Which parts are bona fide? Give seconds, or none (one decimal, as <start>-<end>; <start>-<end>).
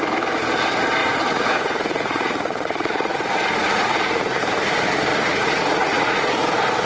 0.0-1.0; 4.4-5.1; 6.2-6.9